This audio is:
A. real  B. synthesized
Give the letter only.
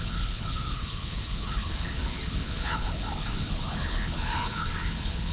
B